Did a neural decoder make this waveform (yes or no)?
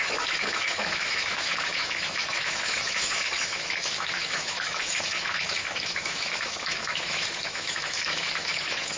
yes